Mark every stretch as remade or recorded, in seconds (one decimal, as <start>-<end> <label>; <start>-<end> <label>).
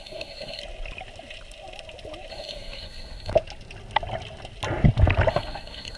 0.0-0.6 remade; 0.6-2.3 recorded; 2.3-3.3 remade; 3.3-5.3 recorded; 5.3-6.0 remade